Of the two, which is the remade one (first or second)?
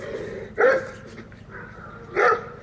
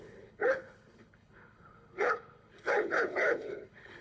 second